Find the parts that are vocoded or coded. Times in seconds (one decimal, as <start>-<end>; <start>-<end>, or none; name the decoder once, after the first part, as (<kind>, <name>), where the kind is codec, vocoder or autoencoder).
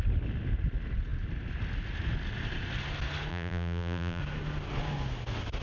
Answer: 3.3-4.2 (vocoder, BigVGAN v2)